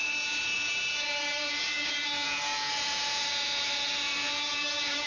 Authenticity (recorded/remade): remade